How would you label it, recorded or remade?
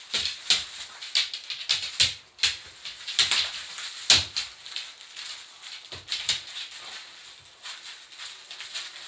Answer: recorded